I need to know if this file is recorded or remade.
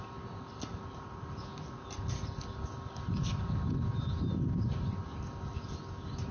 recorded